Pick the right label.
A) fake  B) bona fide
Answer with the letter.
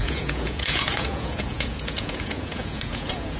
A